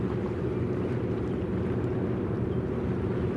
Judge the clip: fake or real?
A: real